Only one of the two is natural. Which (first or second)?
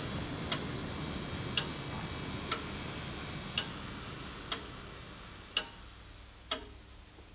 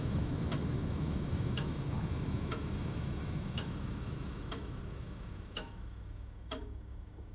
first